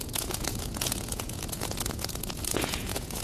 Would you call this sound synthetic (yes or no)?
yes